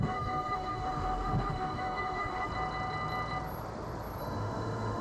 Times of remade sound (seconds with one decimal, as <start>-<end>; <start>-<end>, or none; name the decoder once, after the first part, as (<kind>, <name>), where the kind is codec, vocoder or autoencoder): 0.0-2.5 (autoencoder, DAC-VAE); 4.2-5.0